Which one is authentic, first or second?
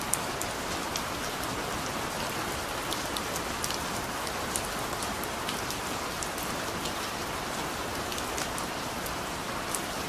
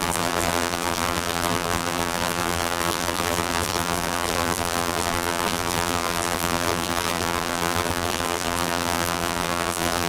first